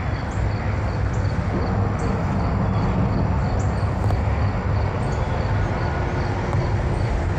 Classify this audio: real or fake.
real